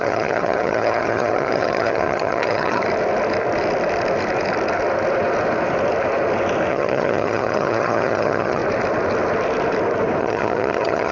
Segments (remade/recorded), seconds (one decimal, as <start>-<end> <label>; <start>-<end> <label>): 0.0-2.8 remade; 2.8-6.7 recorded; 6.7-8.6 remade; 8.6-10.2 recorded; 10.2-11.1 remade